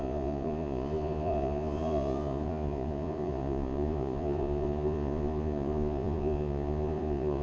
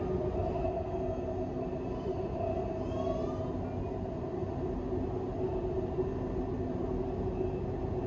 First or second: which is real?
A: second